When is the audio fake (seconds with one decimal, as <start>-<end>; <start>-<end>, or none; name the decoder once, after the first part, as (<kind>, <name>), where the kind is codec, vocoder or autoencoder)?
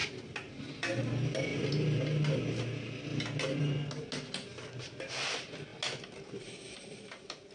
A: none